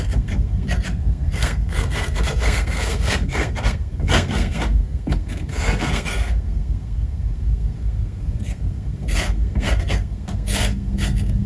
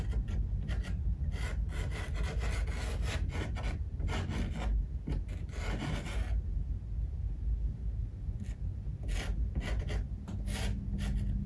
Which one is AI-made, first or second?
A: first